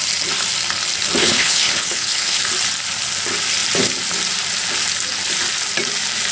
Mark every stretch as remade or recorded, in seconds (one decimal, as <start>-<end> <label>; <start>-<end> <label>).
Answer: 0.0-1.2 recorded; 1.2-2.4 remade; 2.4-6.3 recorded